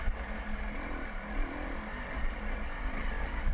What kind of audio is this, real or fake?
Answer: real